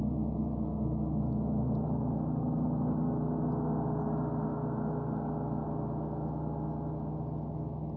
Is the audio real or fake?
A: real